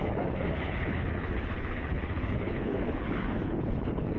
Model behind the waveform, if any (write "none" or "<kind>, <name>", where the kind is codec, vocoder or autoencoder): codec, HILCodec